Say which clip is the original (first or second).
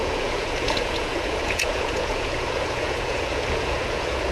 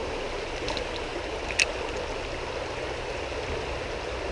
second